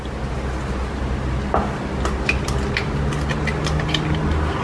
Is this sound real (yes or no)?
yes